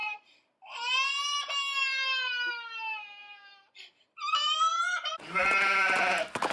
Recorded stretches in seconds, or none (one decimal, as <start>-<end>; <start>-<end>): 2.5-3.2